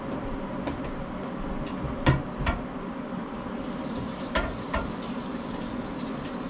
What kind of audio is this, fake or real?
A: real